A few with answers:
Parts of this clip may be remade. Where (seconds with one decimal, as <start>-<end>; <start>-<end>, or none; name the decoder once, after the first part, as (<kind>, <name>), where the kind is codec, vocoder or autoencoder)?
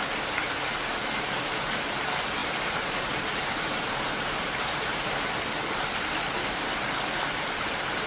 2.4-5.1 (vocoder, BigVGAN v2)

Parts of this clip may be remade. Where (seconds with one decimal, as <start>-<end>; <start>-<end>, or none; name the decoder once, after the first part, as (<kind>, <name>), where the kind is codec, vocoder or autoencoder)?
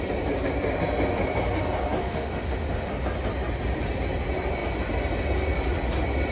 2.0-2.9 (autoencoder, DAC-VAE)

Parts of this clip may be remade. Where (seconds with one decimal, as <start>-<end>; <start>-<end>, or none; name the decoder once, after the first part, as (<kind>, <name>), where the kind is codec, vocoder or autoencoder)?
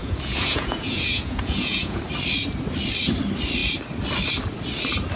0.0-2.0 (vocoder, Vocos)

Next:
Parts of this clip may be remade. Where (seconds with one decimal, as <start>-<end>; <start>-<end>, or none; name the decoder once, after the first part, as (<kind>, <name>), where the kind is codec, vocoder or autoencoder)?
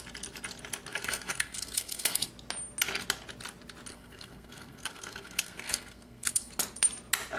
0.9-2.3 (codec, SNAC); 3.9-6.5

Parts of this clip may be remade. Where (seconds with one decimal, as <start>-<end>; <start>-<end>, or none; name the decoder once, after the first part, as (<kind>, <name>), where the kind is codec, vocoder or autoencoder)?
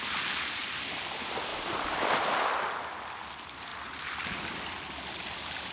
none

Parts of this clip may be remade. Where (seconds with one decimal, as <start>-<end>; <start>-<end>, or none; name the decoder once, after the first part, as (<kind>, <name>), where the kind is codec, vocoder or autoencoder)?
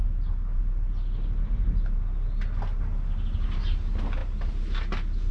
none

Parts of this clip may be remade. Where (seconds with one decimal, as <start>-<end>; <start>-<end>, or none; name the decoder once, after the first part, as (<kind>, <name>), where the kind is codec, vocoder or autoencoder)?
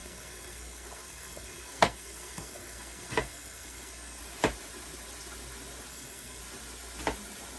0.0-4.2 (codec, SNAC); 5.9-6.4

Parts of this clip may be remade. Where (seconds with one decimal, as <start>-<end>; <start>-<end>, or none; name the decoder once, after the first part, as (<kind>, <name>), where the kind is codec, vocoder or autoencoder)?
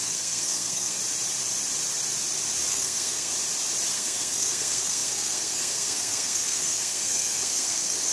0.0-1.0 (codec, SNAC); 2.7-3.3; 3.9-8.1